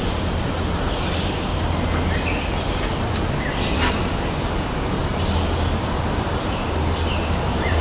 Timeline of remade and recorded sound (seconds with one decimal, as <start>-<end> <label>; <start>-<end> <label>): 0.0-1.1 remade; 1.1-4.5 recorded; 4.5-5.0 remade; 5.0-6.3 recorded; 6.3-7.8 remade